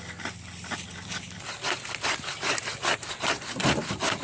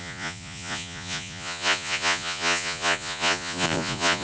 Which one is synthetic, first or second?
second